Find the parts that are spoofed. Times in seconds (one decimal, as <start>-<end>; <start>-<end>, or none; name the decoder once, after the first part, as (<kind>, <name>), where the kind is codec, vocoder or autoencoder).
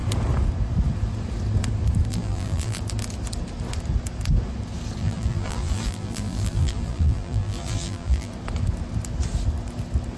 2.1-2.8 (vocoder, BigVGAN v2); 5.0-8.3